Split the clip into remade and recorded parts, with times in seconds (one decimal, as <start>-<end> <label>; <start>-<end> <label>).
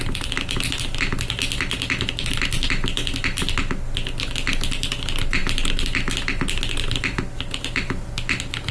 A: 0.0-8.7 recorded